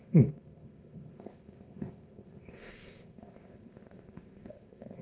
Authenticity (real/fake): fake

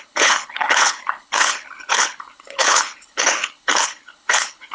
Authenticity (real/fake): fake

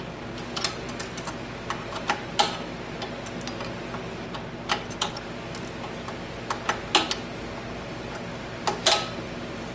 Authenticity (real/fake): real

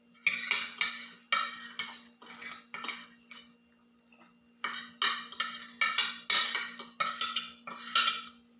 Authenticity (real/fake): real